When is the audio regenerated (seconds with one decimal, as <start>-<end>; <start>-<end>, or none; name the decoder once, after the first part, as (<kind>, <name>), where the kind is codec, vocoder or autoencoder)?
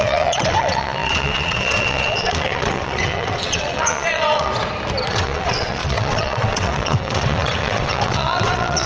0.0-4.5 (vocoder, WaveNeXt); 5.1-8.9